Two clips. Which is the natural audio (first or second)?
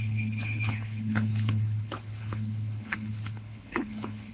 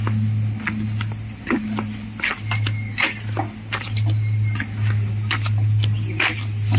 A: second